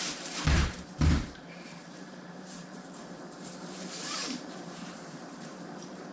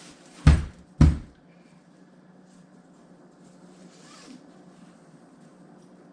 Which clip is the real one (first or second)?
second